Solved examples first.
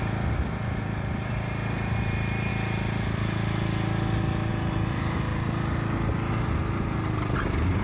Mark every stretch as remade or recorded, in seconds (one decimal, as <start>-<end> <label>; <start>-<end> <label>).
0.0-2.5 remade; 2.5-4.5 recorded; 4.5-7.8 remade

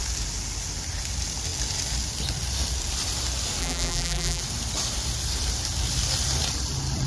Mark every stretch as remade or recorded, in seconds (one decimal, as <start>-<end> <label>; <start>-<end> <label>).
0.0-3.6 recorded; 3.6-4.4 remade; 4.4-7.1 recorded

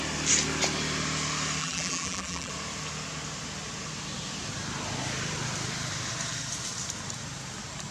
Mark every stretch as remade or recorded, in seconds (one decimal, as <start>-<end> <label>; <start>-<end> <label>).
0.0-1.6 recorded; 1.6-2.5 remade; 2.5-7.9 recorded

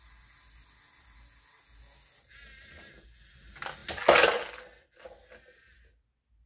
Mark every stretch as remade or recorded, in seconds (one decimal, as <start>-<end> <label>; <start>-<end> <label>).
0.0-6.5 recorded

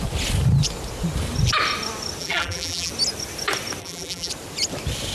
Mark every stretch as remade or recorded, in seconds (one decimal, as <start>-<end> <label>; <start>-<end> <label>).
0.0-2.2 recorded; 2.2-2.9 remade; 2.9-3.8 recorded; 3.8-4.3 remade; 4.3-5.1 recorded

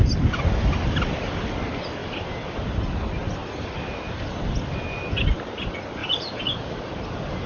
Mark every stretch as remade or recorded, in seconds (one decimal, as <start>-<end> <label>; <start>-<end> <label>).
0.0-2.0 recorded; 2.0-2.8 remade; 2.8-6.0 recorded; 6.0-7.5 remade